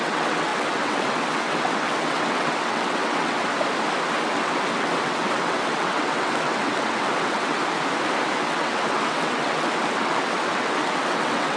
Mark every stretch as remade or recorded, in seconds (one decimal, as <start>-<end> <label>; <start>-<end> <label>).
0.0-3.5 remade; 3.5-4.1 recorded; 4.1-7.6 remade; 7.6-8.3 recorded; 8.3-11.6 remade